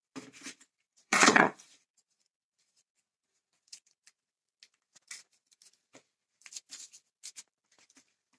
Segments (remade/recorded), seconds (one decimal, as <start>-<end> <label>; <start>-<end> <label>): 0.0-0.9 recorded; 0.9-4.3 remade; 4.3-8.4 recorded